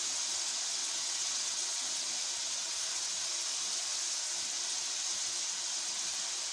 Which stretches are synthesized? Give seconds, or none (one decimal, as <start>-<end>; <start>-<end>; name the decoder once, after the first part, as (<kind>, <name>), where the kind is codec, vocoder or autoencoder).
0.8-2.1 (vocoder, WaveNeXt); 2.6-3.3